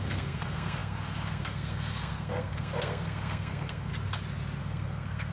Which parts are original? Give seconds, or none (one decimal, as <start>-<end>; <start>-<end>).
3.9-4.6